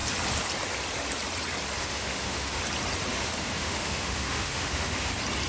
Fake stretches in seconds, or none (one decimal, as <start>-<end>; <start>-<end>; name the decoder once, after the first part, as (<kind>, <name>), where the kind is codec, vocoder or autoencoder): 1.8-2.6 (autoencoder, DAC-VAE); 3.1-5.1